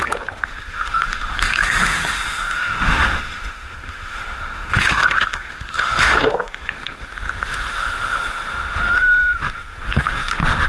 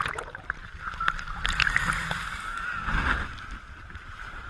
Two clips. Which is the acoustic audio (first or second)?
second